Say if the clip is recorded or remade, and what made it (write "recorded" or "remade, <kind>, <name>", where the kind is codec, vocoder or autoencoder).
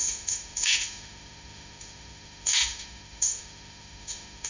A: remade, autoencoder, DAC-VAE